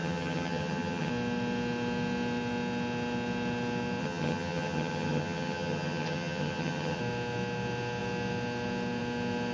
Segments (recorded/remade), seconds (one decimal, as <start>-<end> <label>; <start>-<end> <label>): 0.0-1.1 remade; 1.1-4.0 recorded; 4.0-7.0 remade; 7.0-9.5 recorded